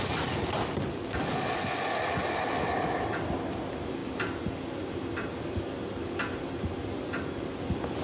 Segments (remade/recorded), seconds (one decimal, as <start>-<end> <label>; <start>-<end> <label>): 0.0-8.0 recorded